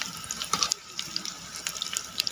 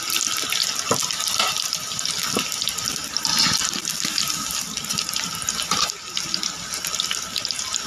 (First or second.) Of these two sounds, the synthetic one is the first